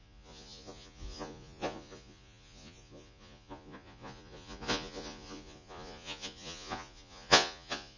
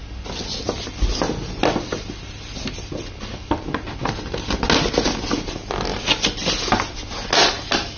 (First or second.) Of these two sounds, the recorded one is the second